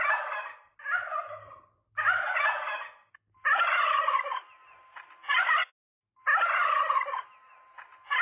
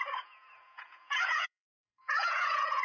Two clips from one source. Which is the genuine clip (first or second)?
first